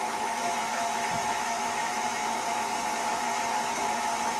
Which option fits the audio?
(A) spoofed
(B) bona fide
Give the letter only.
A